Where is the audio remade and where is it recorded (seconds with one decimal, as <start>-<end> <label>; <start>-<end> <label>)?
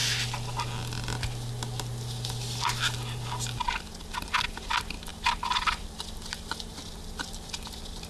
0.0-8.1 recorded